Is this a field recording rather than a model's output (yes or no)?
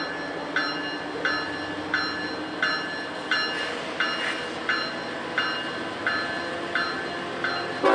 yes